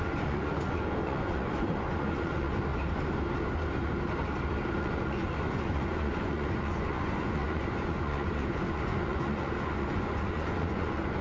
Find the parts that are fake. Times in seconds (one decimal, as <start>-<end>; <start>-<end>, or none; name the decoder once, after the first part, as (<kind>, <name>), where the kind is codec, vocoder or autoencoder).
0.0-2.7 (vocoder, Vocos); 4.8-11.2